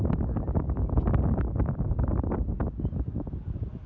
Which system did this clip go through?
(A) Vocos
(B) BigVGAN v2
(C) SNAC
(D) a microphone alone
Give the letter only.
D